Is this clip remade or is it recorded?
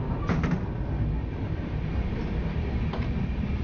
recorded